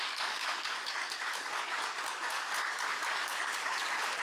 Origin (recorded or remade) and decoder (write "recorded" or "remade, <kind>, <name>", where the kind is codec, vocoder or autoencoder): remade, codec, DAC